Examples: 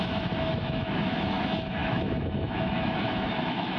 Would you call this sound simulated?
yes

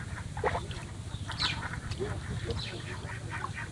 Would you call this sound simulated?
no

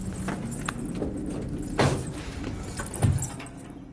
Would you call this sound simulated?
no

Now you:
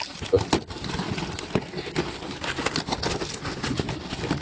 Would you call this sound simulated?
no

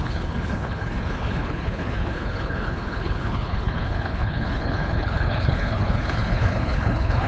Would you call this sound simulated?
yes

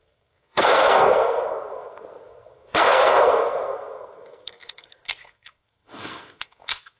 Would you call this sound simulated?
yes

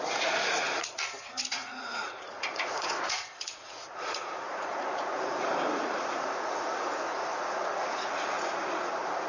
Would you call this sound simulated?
yes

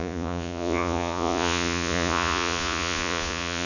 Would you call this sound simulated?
yes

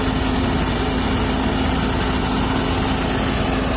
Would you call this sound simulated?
no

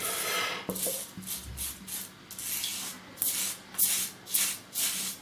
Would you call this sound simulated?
no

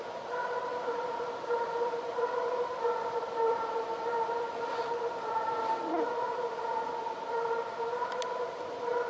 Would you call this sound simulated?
yes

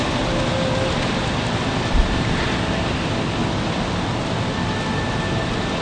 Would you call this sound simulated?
no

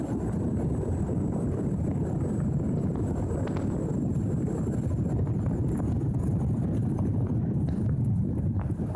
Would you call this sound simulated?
no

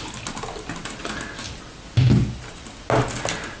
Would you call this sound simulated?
no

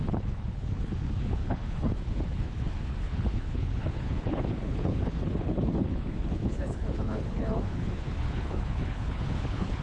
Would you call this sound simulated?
yes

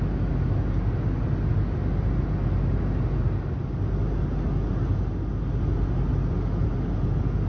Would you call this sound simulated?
no